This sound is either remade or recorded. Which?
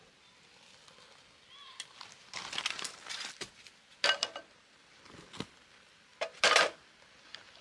recorded